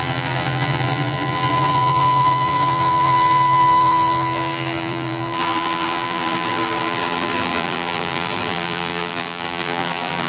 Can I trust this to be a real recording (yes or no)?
no